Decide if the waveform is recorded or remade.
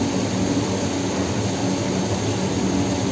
recorded